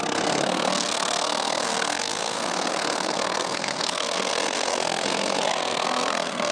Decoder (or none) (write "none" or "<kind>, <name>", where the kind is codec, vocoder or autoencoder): codec, SNAC